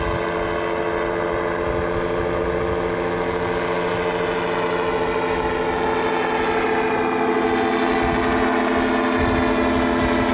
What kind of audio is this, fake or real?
real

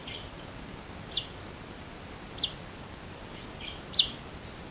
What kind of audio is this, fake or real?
real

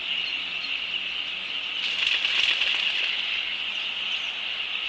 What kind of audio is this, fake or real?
real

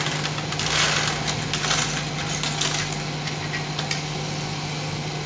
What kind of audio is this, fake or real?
real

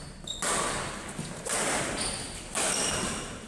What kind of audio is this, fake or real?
real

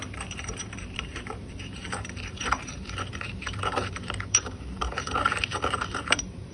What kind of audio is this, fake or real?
fake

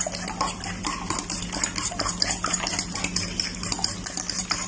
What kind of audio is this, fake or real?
real